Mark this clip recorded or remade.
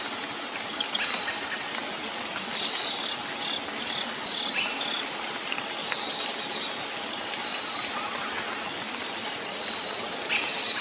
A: recorded